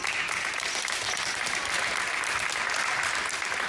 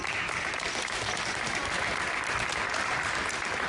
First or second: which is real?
first